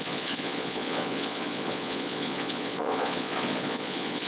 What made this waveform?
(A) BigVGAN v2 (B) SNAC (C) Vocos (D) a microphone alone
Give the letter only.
C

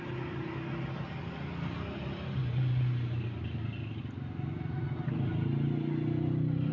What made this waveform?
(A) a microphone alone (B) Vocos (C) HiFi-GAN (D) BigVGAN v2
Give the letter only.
A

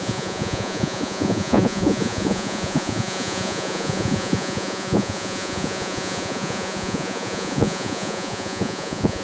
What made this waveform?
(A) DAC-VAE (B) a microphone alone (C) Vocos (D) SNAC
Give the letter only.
C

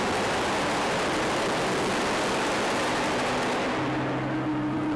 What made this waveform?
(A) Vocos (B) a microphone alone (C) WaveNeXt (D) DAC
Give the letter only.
B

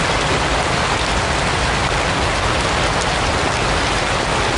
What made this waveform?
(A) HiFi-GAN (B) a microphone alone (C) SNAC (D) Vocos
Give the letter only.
B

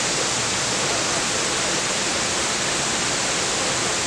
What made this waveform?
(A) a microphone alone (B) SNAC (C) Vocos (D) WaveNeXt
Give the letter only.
A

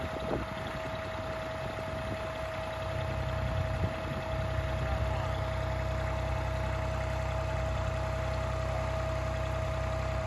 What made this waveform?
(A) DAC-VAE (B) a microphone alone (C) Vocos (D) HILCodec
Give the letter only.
B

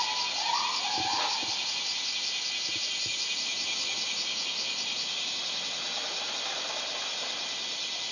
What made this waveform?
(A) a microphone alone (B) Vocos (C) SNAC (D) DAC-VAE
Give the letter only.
A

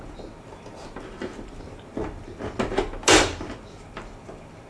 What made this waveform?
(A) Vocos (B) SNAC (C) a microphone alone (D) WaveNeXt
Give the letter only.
C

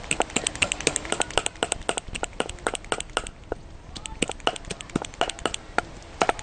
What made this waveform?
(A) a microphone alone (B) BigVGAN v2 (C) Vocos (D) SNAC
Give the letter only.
A